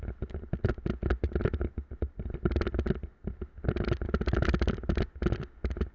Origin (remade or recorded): recorded